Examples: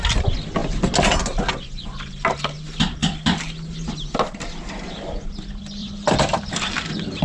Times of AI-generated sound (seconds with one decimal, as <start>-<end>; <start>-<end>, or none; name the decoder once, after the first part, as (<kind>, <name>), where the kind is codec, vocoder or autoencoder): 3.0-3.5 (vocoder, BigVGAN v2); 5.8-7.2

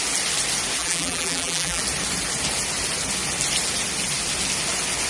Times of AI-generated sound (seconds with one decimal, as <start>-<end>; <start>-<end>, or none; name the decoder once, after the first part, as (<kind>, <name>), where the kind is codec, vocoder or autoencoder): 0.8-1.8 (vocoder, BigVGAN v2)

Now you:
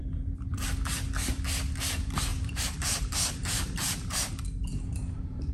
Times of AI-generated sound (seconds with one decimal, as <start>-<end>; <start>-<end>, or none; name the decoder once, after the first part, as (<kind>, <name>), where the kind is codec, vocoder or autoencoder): 0.0-0.7 (vocoder, BigVGAN v2); 2.3-4.3; 4.7-5.5

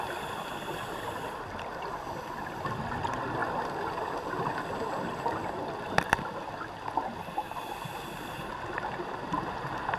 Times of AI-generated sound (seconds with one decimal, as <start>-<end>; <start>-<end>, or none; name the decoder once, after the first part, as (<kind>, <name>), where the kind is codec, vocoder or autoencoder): none

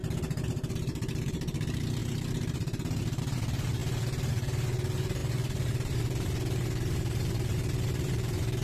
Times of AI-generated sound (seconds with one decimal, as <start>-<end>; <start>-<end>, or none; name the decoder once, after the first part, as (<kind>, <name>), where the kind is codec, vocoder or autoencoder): 0.0-3.8 (vocoder, BigVGAN v2); 4.3-8.6

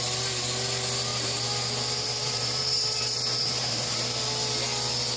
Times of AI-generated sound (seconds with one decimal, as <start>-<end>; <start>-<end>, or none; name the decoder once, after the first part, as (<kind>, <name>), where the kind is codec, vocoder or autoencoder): 1.1-4.2 (vocoder, BigVGAN v2)